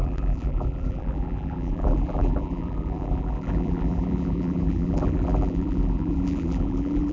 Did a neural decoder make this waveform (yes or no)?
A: yes